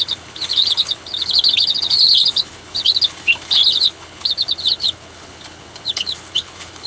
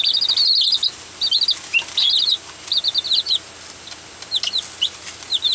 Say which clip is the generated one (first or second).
first